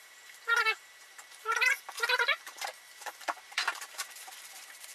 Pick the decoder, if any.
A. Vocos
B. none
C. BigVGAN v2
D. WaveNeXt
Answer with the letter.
C